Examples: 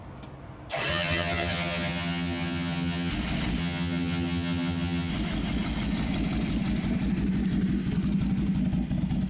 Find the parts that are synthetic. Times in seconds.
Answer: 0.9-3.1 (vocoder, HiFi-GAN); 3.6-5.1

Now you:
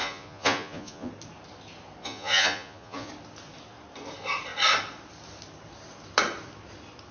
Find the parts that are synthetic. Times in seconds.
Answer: 0.0-1.1 (vocoder, Vocos); 2.0-3.1

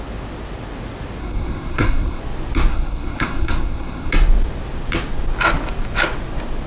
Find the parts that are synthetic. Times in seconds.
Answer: 1.2-2.2 (codec, SNAC); 2.7-4.1

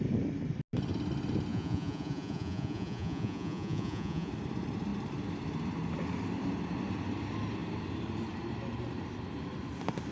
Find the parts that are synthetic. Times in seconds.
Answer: 1.5-4.3 (vocoder, Vocos)

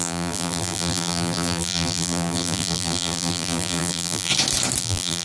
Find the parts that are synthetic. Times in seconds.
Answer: 0.0-4.3 (vocoder, BigVGAN v2); 4.8-5.2

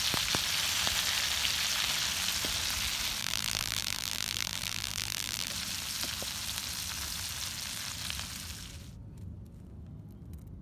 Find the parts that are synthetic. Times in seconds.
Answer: 3.2-5.5 (vocoder, BigVGAN v2)

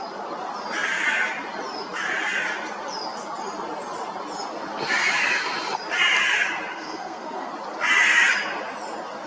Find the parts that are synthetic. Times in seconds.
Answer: 6.7-7.5 (codec, SNAC)

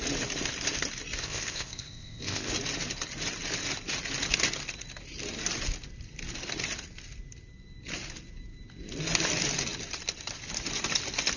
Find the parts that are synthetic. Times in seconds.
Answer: 1.2-2.5 (codec, ZipCodec)